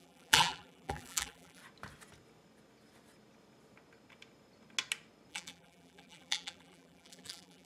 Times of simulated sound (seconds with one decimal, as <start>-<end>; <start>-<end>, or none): 0.0-1.6; 5.3-7.7

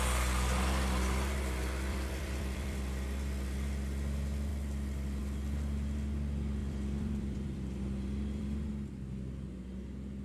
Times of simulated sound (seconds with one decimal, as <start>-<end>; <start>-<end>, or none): 1.9-2.8; 6.6-8.7

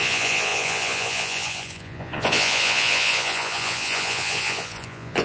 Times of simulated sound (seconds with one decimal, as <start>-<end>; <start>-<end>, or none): 0.0-5.2

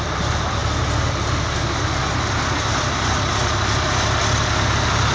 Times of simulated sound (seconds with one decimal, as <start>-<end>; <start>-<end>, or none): none